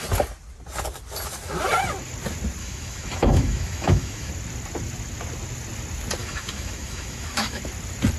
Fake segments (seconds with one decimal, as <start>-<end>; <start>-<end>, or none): 2.6-4.3; 6.2-7.6